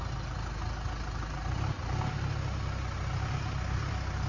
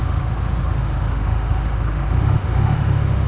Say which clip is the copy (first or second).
second